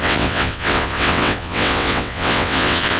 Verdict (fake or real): fake